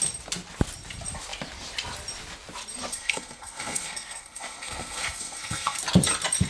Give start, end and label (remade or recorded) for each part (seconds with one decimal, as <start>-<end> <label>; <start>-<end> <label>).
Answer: 0.0-2.9 recorded; 2.9-5.8 remade; 5.8-6.5 recorded